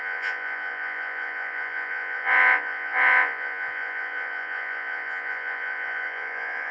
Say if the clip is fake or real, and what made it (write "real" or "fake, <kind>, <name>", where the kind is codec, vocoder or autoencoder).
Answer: fake, vocoder, Vocos